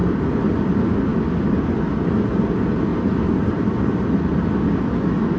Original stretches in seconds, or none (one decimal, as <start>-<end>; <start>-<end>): 0.7-2.9; 3.5-5.4